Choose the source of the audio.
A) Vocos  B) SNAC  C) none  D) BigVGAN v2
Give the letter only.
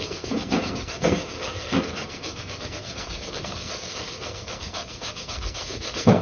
B